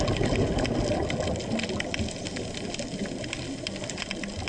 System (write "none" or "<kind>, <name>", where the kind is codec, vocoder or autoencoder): none